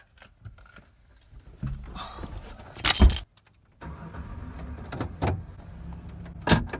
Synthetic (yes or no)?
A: no